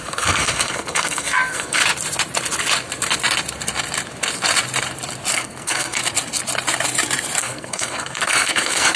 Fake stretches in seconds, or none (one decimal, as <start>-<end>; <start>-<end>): 0.0-1.8; 5.3-6.0; 7.4-9.0

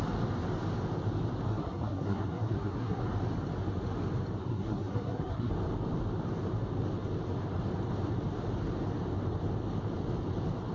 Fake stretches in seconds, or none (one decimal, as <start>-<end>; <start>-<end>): 1.5-3.0; 4.4-5.5

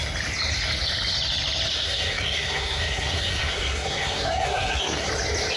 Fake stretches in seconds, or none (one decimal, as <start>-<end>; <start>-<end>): 1.7-5.1